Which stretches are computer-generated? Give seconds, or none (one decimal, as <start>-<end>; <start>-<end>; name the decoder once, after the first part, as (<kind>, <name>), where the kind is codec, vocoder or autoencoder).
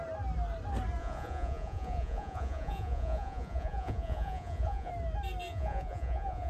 1.0-4.9 (vocoder, Vocos); 5.5-6.5